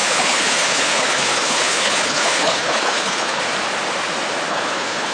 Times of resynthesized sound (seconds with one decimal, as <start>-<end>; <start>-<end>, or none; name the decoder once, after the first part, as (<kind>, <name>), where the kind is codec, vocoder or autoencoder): 0.0-3.4 (codec, HILCodec); 4.5-5.1